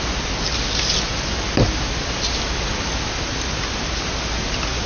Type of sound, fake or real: real